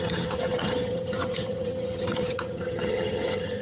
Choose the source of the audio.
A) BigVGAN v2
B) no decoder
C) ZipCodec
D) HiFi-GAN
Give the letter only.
D